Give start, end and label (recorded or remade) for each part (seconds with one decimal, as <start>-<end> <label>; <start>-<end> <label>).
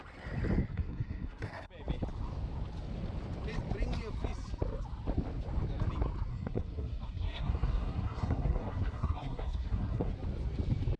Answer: 0.0-0.7 recorded; 0.7-1.7 remade; 1.7-6.3 recorded; 6.3-10.1 remade; 10.1-11.0 recorded